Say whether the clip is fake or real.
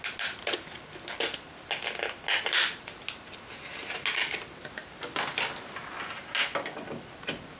real